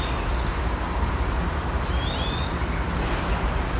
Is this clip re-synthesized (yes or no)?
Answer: yes